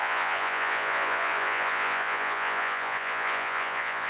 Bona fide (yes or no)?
no